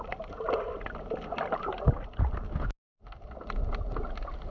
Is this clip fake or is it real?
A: real